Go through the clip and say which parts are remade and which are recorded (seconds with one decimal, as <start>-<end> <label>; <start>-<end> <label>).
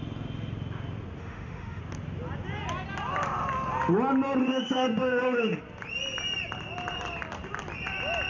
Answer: 0.0-1.2 recorded; 1.2-1.8 remade; 1.8-4.4 recorded; 4.4-5.6 remade; 5.6-8.3 recorded